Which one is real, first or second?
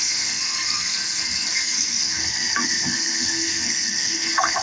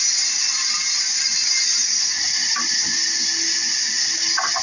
second